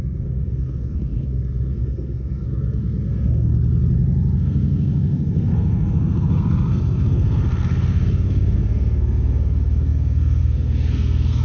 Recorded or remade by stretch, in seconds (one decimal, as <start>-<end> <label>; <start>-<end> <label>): 0.0-3.5 remade; 3.5-4.4 recorded; 4.4-11.4 remade